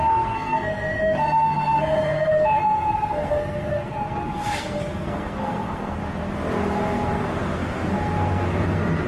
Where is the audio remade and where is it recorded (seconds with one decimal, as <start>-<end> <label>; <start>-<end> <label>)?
0.0-6.0 remade; 6.0-6.6 recorded; 6.6-9.1 remade